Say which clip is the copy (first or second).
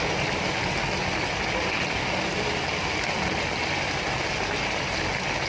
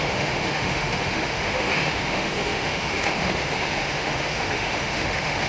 second